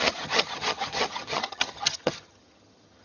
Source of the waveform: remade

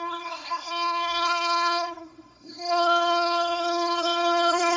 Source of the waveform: remade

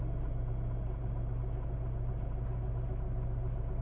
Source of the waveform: recorded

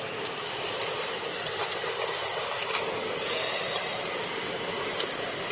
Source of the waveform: recorded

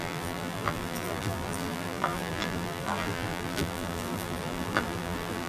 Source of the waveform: remade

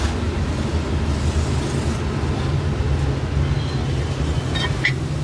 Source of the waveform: recorded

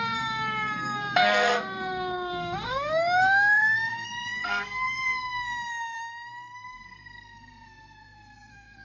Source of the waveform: remade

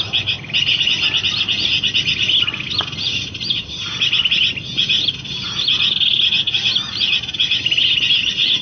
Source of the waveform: recorded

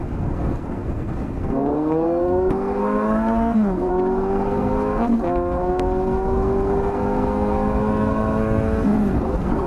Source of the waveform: remade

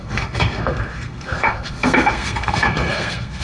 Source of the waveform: remade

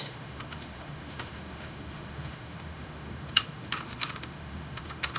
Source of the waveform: remade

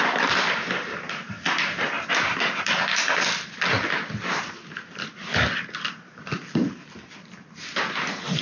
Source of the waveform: recorded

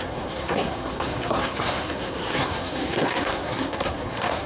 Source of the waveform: remade